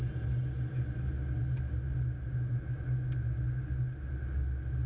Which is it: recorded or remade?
recorded